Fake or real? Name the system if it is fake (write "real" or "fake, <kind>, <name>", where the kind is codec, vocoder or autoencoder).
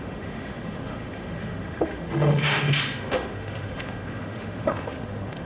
fake, autoencoder, DAC-VAE